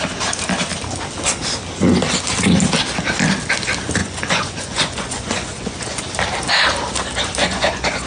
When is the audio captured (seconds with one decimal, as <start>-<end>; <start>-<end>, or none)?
0.0-4.0; 6.0-7.4